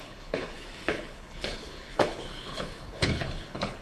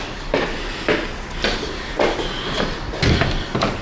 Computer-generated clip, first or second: first